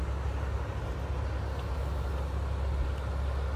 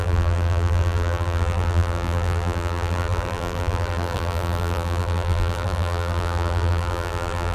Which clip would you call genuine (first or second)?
first